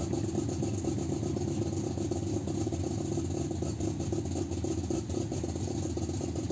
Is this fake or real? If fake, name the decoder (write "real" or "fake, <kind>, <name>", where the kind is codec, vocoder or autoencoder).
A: real